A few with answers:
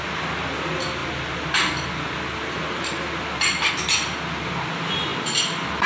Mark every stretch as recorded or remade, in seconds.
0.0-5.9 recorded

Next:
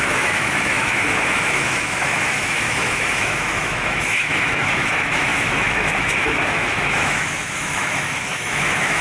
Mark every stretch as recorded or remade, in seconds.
0.0-9.0 remade

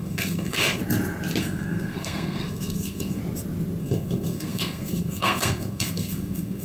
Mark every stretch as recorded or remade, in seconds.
0.0-0.8 remade; 0.8-1.4 recorded; 1.4-3.2 remade; 3.2-3.8 recorded; 3.8-6.6 remade

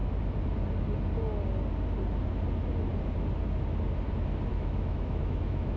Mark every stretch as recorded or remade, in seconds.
0.0-4.5 recorded; 4.5-5.8 remade

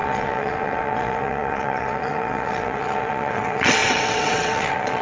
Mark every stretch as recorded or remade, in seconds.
0.0-5.0 remade